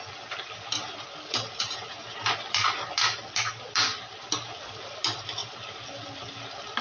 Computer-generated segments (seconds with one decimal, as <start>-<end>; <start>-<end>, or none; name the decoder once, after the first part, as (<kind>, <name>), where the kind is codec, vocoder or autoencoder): none